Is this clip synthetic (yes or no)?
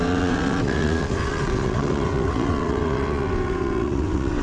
yes